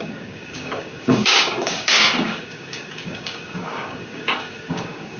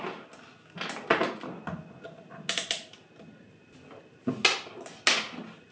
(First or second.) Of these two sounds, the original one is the second